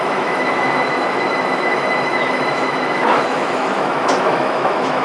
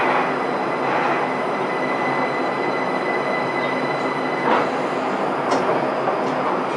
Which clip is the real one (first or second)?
second